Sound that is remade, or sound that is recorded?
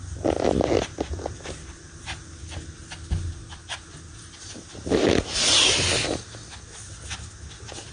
recorded